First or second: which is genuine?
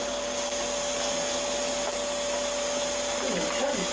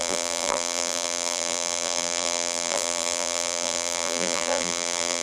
first